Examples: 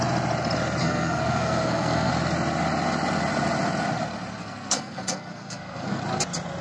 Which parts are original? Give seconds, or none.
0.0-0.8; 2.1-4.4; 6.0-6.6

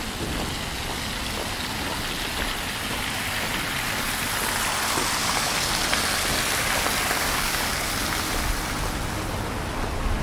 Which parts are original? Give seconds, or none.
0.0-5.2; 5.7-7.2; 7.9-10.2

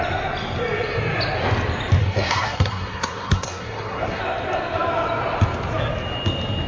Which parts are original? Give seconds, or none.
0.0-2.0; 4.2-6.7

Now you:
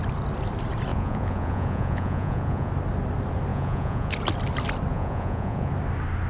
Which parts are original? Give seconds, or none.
0.0-0.9; 2.7-3.5; 4.1-4.9; 5.7-6.3

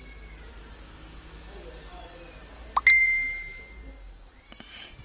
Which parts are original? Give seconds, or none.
0.0-3.0; 3.6-5.0

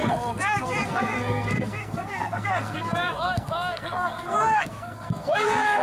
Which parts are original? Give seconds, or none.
none